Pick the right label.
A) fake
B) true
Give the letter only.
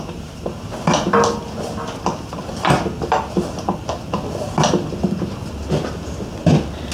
B